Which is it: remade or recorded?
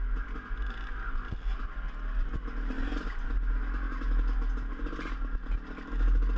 recorded